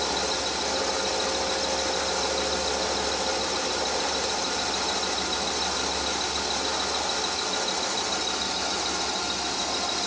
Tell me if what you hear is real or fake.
real